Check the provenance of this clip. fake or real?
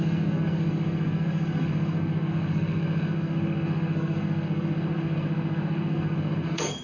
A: fake